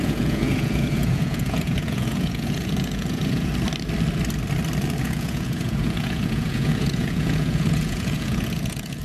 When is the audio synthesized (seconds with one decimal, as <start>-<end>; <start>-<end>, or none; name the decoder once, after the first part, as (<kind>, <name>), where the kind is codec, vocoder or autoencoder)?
0.0-3.5 (vocoder, Vocos); 5.0-9.0